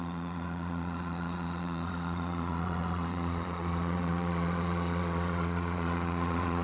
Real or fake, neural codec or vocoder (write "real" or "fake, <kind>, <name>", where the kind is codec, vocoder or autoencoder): fake, vocoder, Vocos